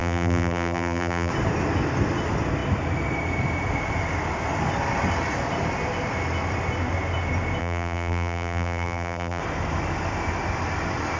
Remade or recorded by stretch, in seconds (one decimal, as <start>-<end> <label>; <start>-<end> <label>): 0.0-1.3 remade; 1.3-7.6 recorded; 7.6-9.4 remade; 9.4-11.2 recorded